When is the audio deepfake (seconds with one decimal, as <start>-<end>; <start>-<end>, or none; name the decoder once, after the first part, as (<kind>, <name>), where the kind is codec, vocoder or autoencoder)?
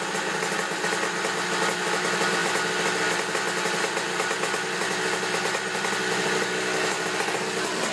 none